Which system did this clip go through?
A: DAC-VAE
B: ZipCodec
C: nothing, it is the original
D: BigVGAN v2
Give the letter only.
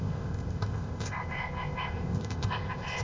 B